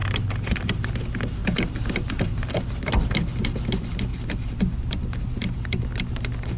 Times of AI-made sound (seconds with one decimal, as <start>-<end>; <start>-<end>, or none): 1.4-2.6; 4.1-6.6